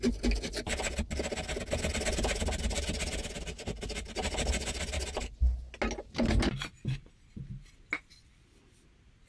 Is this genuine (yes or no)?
yes